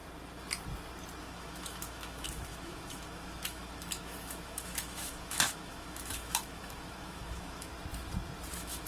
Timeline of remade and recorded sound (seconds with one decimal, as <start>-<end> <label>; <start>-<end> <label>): 0.0-1.2 recorded; 1.2-7.7 remade; 7.7-8.5 recorded; 8.5-8.9 remade